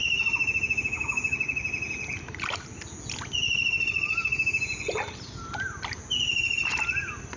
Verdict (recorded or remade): recorded